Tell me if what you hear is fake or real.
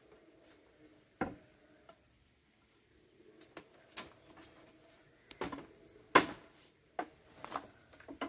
real